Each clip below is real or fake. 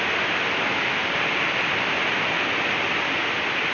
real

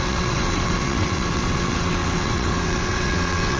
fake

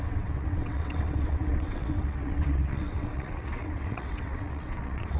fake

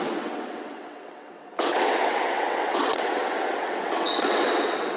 fake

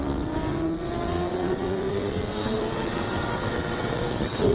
fake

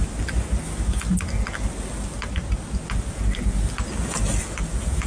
real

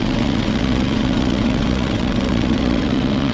fake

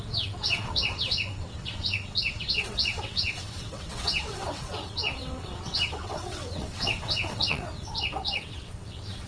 fake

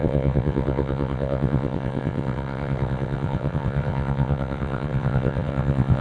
fake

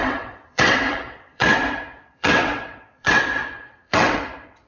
fake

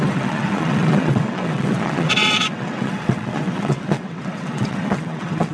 fake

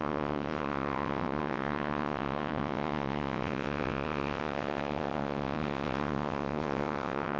fake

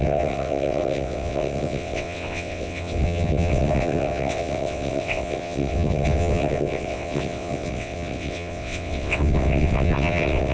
fake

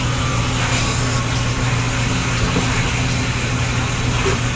real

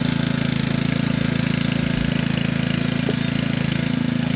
real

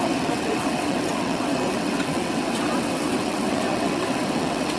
fake